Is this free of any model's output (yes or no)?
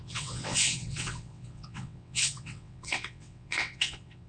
no